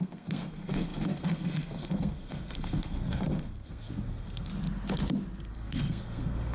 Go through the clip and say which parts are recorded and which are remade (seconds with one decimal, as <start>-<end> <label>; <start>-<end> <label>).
0.0-4.5 remade; 4.5-5.5 recorded; 5.5-6.5 remade